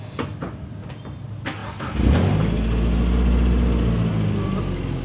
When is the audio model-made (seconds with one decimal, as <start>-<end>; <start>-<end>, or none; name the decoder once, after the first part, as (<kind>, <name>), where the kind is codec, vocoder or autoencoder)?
none